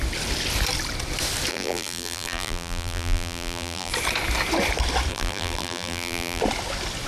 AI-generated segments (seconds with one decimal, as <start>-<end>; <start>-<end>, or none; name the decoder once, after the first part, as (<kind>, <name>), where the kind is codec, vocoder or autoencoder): 1.5-3.9 (vocoder, BigVGAN v2); 5.1-6.4